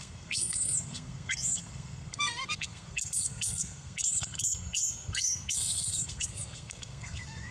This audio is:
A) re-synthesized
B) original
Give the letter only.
A